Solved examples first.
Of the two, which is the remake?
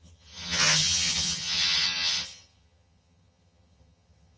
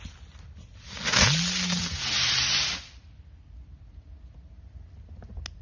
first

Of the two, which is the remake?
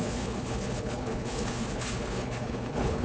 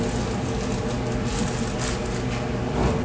first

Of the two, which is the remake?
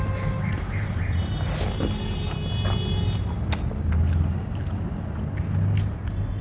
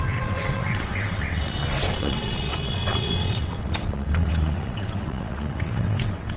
second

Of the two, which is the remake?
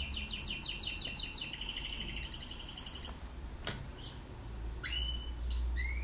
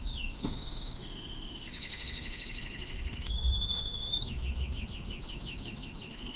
second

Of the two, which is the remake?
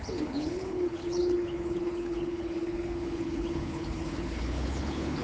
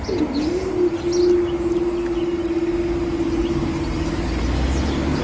first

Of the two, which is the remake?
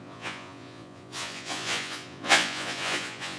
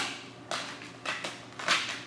first